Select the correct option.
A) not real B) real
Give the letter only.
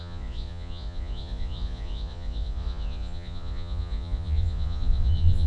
A